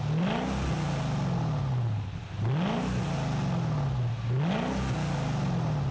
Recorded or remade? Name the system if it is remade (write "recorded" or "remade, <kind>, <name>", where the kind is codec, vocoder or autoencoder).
recorded